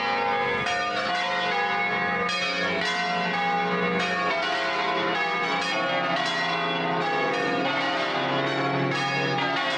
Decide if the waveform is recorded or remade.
recorded